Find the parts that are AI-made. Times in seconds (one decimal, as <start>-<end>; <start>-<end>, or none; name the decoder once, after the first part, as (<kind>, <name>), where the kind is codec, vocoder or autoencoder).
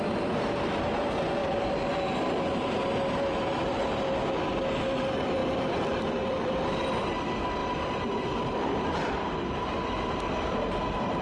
1.4-4.3 (vocoder, BigVGAN v2); 5.4-7.1; 7.6-9.5